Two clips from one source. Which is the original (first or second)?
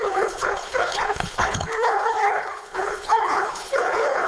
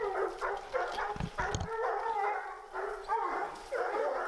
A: second